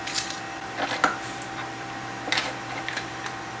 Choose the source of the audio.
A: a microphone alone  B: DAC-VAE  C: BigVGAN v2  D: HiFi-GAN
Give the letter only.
C